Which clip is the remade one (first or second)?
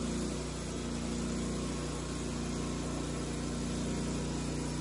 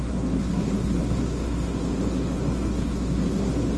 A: second